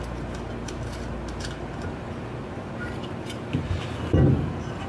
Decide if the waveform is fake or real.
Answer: real